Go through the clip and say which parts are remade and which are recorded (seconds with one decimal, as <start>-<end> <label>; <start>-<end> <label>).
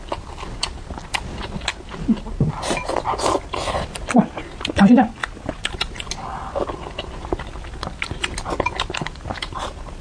0.0-1.7 recorded; 1.7-2.5 remade; 2.5-5.2 recorded; 5.2-6.1 remade; 6.1-10.0 recorded